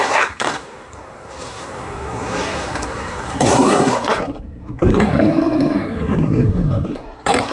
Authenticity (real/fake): fake